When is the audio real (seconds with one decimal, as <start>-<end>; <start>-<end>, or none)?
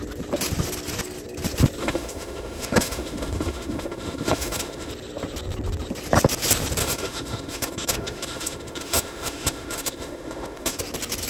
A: 0.0-1.8; 4.9-6.8; 10.8-11.3